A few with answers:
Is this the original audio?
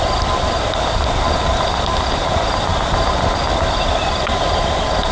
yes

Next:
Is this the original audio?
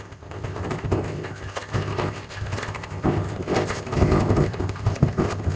no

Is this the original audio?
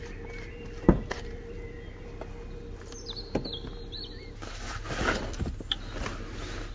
yes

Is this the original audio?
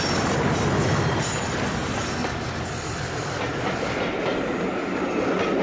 yes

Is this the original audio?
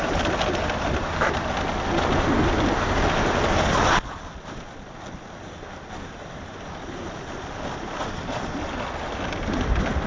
yes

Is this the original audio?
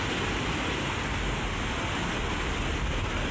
yes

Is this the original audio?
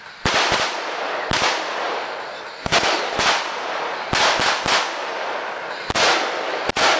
yes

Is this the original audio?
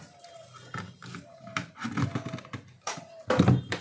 yes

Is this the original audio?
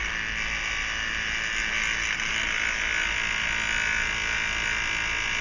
yes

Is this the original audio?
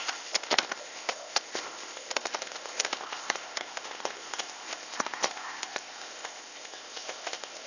no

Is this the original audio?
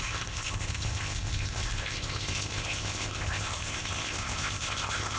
no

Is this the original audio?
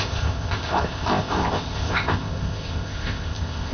no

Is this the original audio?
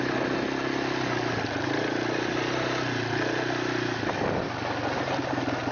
yes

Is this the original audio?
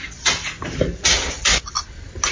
yes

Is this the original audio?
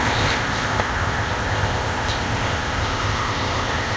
no